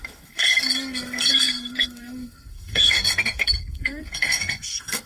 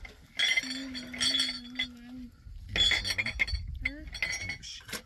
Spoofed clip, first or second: first